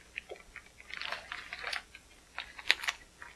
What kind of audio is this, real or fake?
real